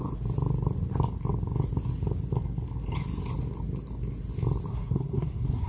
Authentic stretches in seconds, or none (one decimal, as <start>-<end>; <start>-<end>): 0.0-4.7